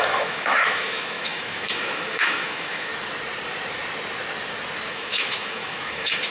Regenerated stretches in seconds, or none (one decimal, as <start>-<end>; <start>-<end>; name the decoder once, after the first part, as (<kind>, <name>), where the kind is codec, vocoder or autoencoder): 0.0-2.9 (autoencoder, DAC-VAE); 4.9-6.3